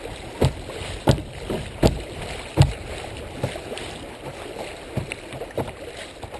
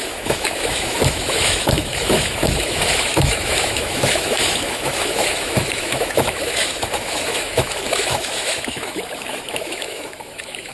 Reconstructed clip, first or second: second